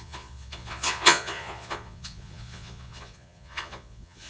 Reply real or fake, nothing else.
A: fake